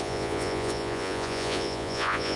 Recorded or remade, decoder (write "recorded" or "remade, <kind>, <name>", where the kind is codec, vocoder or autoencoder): remade, vocoder, Vocos